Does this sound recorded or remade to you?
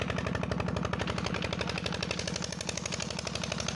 recorded